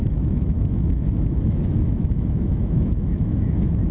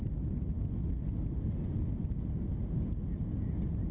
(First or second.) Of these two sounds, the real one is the second